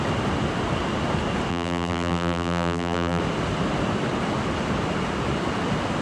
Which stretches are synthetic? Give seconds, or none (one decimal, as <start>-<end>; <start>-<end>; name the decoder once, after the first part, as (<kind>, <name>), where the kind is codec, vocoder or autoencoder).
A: 1.5-3.2 (vocoder, BigVGAN v2)

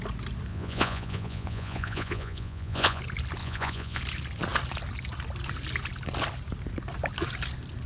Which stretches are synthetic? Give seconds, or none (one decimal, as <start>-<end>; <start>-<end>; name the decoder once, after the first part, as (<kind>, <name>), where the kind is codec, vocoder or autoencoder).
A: 0.5-3.0 (vocoder, Vocos); 3.4-4.0